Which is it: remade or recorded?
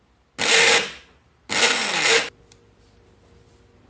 recorded